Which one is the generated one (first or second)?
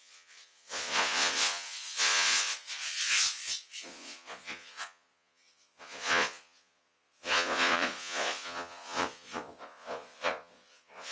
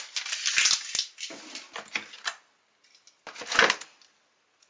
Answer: first